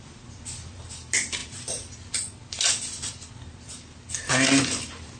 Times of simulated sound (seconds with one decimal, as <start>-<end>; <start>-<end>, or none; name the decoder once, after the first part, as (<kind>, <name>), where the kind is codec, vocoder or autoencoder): none